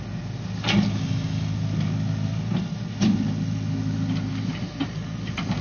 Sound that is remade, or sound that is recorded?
recorded